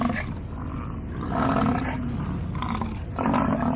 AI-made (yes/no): no